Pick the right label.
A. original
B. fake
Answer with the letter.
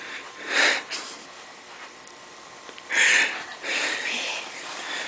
B